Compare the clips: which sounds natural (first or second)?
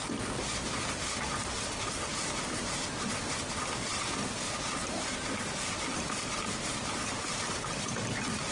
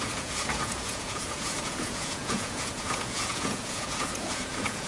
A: first